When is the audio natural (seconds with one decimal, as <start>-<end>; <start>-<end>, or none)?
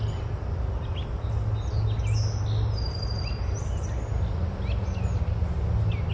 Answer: 0.0-6.1